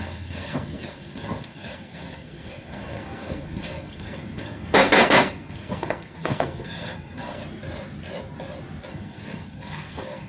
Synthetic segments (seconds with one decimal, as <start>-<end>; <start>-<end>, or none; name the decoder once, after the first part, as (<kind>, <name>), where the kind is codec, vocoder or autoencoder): 0.0-7.4 (codec, SNAC); 8.9-10.3